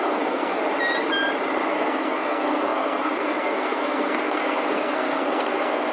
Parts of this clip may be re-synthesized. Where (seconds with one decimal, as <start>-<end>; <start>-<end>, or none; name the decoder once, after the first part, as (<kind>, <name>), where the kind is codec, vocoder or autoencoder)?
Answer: 0.0-0.6 (codec, SNAC); 1.7-5.9